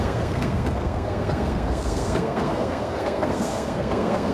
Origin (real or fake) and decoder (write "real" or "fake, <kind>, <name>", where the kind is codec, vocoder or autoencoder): fake, codec, SNAC